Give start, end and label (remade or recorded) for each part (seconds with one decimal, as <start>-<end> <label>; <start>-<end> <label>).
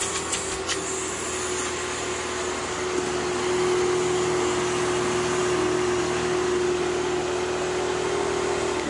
0.0-8.9 recorded